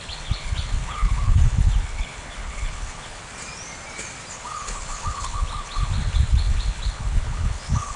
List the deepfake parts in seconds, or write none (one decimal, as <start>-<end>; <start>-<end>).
0.0-3.2; 4.3-8.0